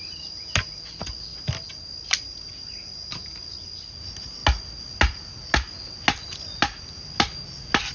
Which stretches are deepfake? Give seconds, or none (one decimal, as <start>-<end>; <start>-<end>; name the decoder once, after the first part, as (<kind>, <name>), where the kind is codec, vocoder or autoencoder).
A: none